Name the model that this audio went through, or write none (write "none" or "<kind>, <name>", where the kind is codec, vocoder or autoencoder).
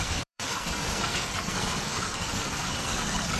codec, SNAC